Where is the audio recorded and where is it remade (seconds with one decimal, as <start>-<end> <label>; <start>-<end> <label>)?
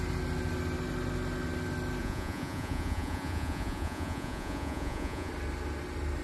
0.0-2.0 recorded; 2.0-5.3 remade; 5.3-6.2 recorded